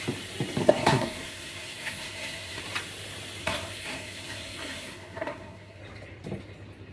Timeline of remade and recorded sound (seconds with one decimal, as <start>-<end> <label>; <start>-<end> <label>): 0.0-0.6 recorded; 0.6-2.6 remade; 2.6-3.4 recorded; 3.4-5.8 remade; 5.8-6.9 recorded